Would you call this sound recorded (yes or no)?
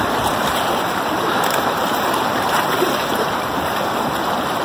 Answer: no